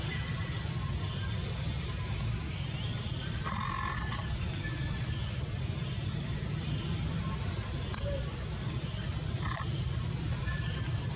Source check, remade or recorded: recorded